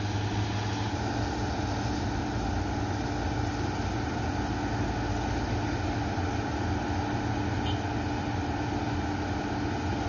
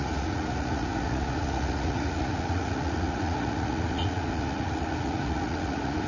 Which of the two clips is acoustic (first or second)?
first